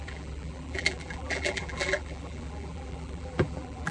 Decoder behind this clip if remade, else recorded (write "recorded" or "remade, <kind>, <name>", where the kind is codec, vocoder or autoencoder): remade, vocoder, BigVGAN v2